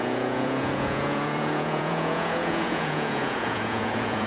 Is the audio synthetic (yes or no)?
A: yes